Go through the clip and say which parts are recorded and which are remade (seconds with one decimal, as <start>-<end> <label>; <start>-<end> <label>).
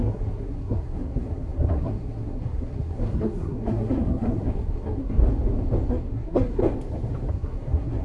0.0-5.2 remade; 5.2-5.9 recorded; 5.9-6.6 remade; 6.6-7.3 recorded; 7.3-8.0 remade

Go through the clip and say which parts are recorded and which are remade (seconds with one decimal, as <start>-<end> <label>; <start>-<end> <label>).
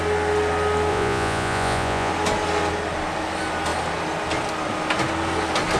0.0-0.9 recorded; 0.9-2.1 remade; 2.1-5.8 recorded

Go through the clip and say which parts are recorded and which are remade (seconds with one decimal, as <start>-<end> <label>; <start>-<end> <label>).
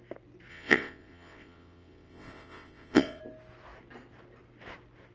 0.0-0.5 recorded; 0.5-3.2 remade; 3.2-5.1 recorded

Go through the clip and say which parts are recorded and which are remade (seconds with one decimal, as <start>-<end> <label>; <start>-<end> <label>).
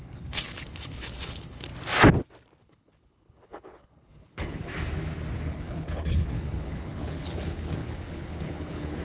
0.0-1.7 remade; 1.7-2.6 recorded; 2.6-4.7 remade; 4.7-5.5 recorded; 5.5-9.0 remade